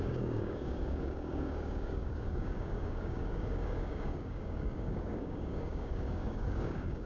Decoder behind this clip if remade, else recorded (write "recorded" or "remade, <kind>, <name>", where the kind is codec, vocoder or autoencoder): remade, codec, DAC